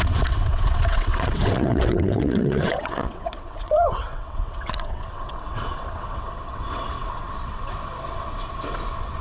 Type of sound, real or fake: fake